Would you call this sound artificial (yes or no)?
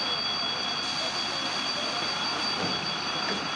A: no